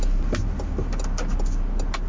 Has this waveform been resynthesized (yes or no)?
no